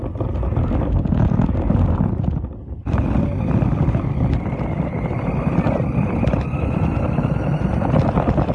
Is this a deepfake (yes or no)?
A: no